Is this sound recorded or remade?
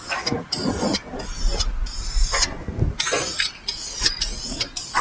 recorded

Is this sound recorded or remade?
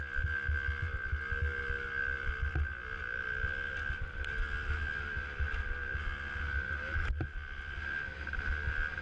recorded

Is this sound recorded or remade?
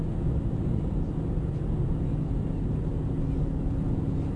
recorded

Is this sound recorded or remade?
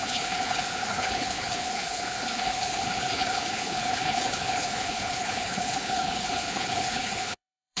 remade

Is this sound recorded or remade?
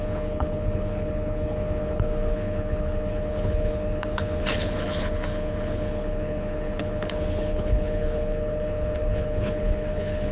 remade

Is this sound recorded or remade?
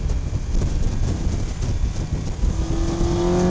recorded